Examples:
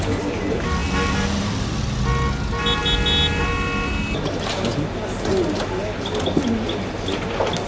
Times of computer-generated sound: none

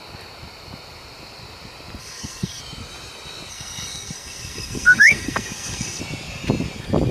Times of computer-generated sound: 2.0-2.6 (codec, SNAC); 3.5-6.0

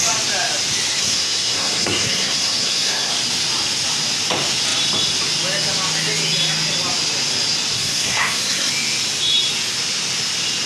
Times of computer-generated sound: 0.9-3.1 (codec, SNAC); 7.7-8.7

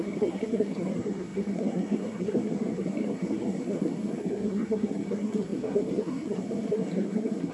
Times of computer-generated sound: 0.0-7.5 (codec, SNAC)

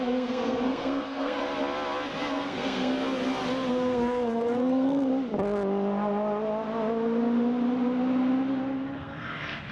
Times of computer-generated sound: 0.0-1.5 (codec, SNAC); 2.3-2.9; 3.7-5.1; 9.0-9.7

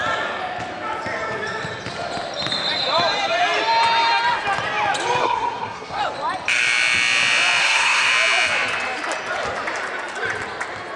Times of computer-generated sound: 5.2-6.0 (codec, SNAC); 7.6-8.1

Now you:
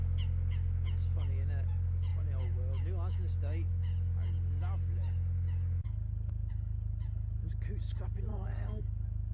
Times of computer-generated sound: 8.3-8.8 (codec, SNAC)